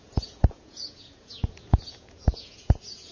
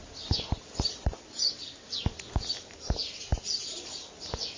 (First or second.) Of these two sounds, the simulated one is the first